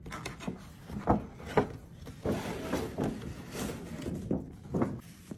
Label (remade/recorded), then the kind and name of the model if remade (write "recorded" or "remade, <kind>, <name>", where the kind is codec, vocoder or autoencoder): recorded